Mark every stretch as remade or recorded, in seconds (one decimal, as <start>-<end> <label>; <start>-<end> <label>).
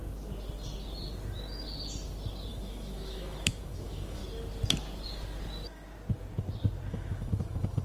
0.0-2.5 recorded; 2.5-4.2 remade; 4.2-6.9 recorded; 6.9-7.8 remade